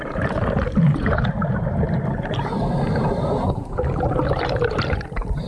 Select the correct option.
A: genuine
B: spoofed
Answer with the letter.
B